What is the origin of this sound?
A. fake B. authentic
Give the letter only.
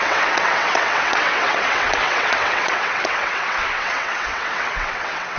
A